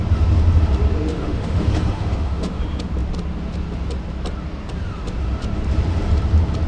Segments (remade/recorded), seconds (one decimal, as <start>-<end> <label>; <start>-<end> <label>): 0.0-1.1 recorded; 1.1-2.6 remade; 2.6-6.7 recorded